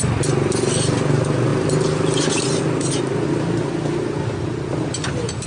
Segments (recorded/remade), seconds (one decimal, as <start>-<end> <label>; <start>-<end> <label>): 0.0-5.5 recorded